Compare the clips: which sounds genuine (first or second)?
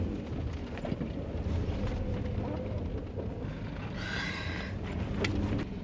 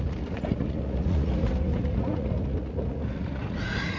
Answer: first